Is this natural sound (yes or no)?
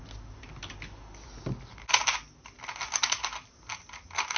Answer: yes